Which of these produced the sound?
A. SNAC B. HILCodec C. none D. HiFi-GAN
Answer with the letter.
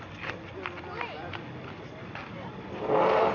C